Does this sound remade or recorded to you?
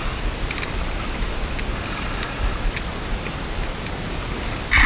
recorded